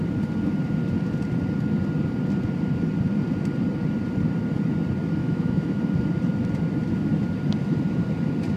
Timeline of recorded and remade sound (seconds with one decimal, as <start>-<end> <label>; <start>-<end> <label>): 0.0-5.2 recorded; 5.2-5.8 remade; 5.8-8.6 recorded